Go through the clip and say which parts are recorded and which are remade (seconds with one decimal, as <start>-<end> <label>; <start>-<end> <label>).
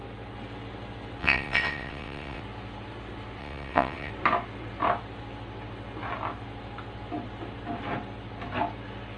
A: 0.0-1.2 recorded; 1.2-2.4 remade; 2.4-3.4 recorded; 3.4-4.1 remade; 4.1-9.2 recorded